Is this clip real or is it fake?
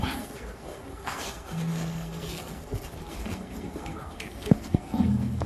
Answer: fake